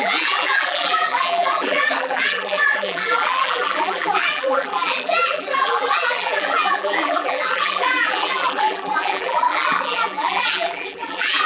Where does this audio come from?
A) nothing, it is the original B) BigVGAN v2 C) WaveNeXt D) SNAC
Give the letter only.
B